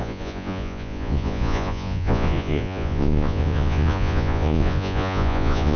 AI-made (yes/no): yes